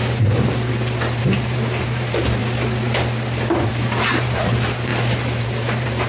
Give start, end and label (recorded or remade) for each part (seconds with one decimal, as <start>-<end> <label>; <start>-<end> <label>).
0.0-1.2 recorded; 1.2-2.4 remade; 2.4-3.7 recorded; 3.7-4.9 remade; 4.9-5.4 recorded; 5.4-6.1 remade